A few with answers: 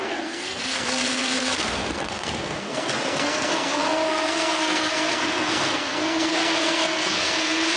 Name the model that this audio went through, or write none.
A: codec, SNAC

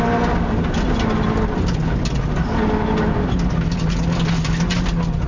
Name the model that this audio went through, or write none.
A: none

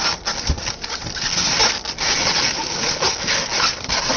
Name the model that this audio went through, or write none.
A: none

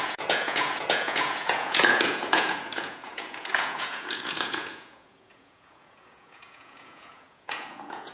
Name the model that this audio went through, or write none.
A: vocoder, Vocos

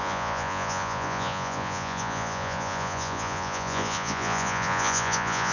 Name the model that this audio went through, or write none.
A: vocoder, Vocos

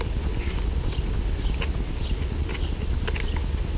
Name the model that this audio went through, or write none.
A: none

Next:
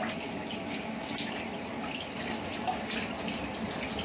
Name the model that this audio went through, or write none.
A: none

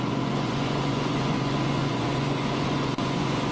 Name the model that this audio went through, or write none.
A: vocoder, Vocos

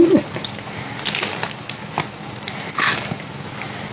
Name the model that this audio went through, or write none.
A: none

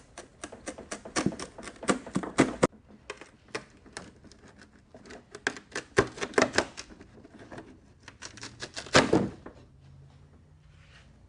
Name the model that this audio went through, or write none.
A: none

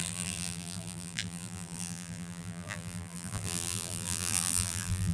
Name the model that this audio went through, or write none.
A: vocoder, BigVGAN v2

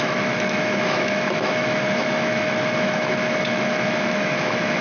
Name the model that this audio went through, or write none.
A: autoencoder, DAC-VAE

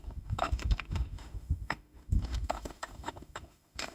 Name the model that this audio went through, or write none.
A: autoencoder, DAC-VAE